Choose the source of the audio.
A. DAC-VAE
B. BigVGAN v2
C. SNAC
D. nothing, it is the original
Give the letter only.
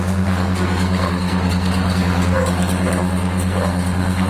C